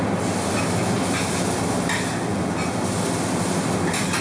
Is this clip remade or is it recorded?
recorded